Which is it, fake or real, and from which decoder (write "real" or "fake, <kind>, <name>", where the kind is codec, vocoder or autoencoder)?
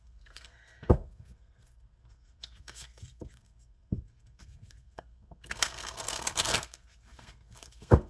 fake, codec, SNAC